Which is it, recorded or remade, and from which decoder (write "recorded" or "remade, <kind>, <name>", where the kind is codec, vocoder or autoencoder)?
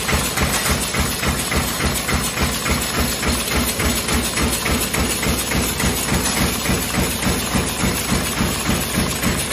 recorded